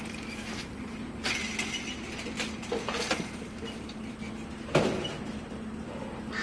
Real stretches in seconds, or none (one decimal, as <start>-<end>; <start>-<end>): 1.2-5.0